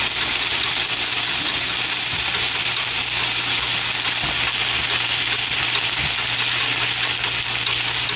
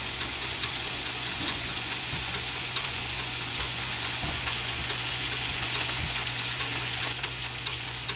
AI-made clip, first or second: second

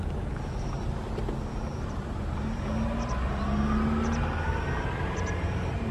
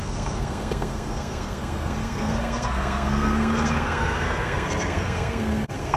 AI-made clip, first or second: second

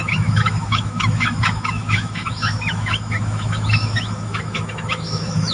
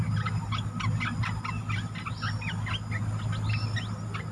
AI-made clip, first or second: first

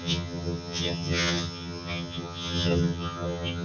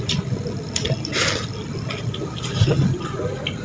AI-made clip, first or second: first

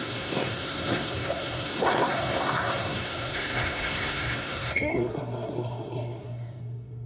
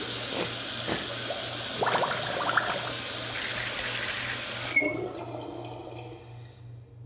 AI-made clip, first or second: first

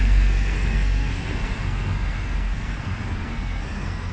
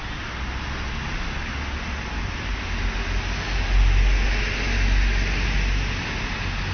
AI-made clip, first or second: first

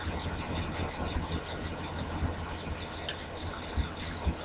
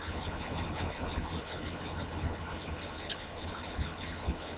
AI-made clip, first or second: second